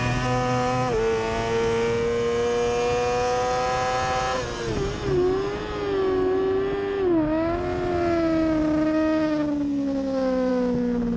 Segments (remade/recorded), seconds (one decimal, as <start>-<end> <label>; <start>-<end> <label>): 0.0-11.2 recorded